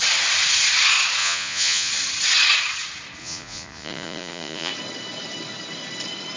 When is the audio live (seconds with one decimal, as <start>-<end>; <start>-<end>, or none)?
0.0-1.2; 1.9-3.2; 4.7-6.4